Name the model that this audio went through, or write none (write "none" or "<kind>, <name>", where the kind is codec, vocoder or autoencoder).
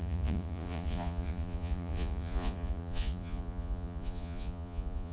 vocoder, Vocos